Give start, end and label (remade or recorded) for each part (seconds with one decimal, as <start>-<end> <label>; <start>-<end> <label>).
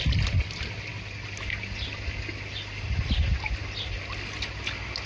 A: 0.0-5.1 recorded